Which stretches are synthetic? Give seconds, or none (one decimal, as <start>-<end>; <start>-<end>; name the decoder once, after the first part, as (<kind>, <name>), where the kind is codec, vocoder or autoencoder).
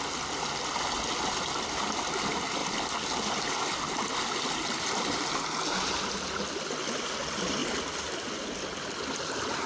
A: none